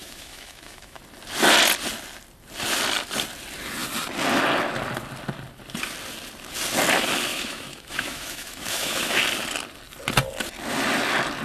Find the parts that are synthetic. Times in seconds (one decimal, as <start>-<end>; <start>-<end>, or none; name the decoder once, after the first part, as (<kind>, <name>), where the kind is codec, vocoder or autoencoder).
0.0-1.0 (autoencoder, DAC-VAE); 7.3-9.2